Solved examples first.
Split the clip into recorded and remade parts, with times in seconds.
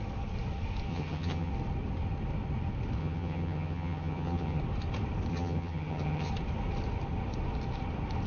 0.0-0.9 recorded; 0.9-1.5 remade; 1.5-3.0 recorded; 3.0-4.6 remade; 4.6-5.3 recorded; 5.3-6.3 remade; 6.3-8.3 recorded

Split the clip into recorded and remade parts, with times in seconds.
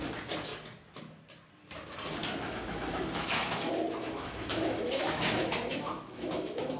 0.0-2.2 recorded; 2.2-3.6 remade; 3.6-4.0 recorded; 4.0-6.8 remade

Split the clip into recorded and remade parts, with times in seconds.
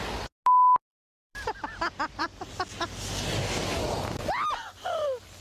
0.0-0.9 recorded; 0.9-2.4 remade; 2.4-5.4 recorded